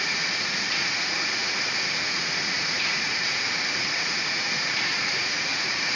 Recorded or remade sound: remade